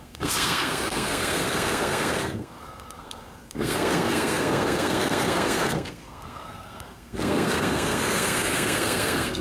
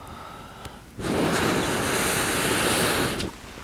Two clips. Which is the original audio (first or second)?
second